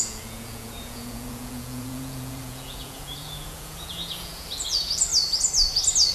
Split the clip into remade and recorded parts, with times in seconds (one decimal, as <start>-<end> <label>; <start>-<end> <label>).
0.0-5.1 remade; 5.1-6.1 recorded